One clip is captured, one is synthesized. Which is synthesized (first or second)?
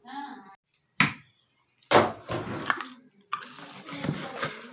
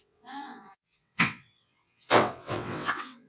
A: second